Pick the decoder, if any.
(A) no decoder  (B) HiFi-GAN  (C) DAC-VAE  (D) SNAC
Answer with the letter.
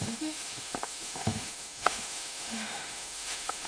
C